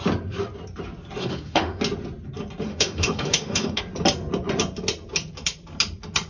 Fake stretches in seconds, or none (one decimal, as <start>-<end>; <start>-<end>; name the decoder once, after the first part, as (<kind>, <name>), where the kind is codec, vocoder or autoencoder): 1.2-1.8 (autoencoder, DAC-VAE); 2.7-3.8